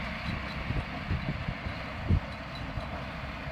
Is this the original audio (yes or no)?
yes